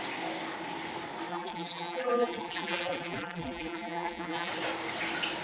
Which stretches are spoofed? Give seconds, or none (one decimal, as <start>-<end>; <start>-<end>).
1.3-4.5